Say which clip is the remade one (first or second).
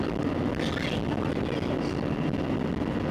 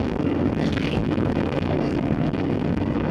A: second